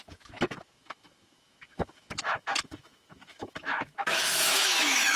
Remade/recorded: remade